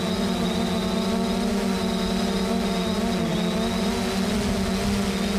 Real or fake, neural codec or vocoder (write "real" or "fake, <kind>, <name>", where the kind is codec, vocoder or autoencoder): real